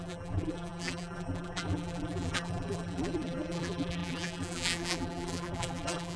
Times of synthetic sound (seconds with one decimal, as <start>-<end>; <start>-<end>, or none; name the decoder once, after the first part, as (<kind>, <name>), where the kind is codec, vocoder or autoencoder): 0.0-6.2 (vocoder, BigVGAN v2)